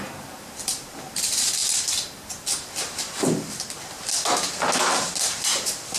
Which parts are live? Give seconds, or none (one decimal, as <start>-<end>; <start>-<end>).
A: 1.6-5.2